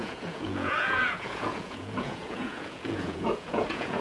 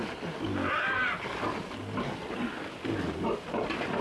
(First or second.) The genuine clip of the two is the second